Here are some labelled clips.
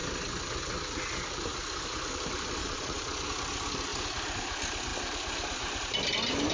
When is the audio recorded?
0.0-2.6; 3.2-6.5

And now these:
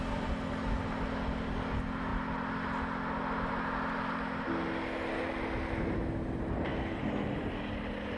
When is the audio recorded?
0.0-8.2

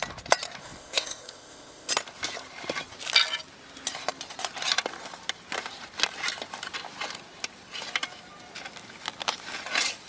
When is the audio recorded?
0.0-0.6; 1.9-10.1